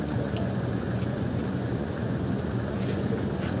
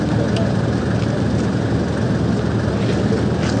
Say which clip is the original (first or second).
second